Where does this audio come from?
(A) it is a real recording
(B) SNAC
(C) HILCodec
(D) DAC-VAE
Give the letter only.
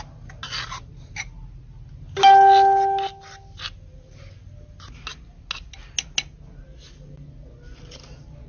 A